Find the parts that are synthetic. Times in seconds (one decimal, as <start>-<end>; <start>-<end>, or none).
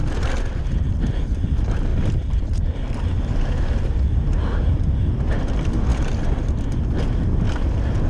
1.9-4.8; 5.9-6.5